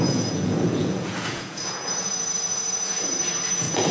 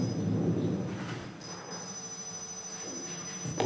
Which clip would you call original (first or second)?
second